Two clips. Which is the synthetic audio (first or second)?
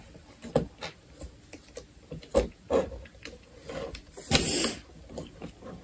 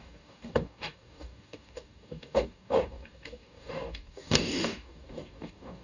second